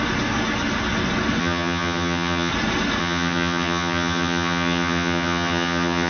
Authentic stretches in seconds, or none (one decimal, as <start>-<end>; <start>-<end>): 0.0-1.4; 2.5-3.0